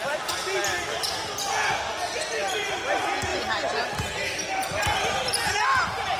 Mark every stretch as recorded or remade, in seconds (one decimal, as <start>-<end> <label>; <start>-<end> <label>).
0.0-6.2 recorded